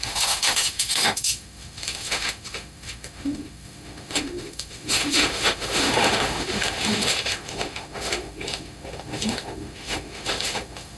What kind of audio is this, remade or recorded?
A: remade